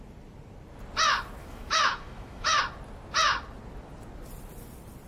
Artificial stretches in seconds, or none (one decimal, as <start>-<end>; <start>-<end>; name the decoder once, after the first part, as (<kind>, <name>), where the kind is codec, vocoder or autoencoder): 1.4-2.6 (autoencoder, DAC-VAE)